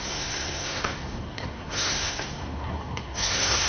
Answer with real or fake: fake